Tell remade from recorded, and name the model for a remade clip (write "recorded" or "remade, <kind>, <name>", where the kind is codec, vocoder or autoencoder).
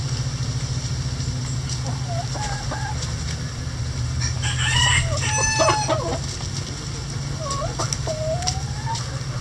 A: recorded